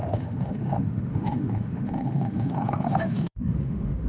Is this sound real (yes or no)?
no